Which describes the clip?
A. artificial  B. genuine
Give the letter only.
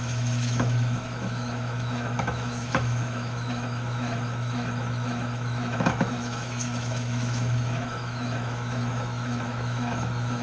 A